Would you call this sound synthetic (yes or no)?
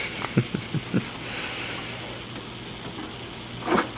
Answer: no